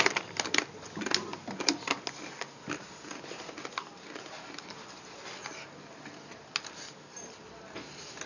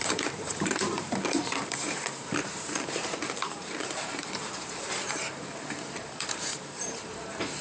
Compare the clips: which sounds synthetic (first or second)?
second